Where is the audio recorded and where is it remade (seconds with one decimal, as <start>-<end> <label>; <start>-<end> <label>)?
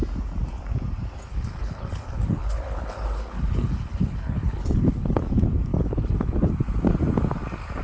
0.0-1.3 recorded; 1.3-5.2 remade; 5.2-5.7 recorded; 5.7-6.5 remade; 6.5-7.8 recorded